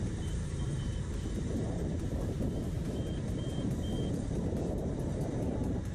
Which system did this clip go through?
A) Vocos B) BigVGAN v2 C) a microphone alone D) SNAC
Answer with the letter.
B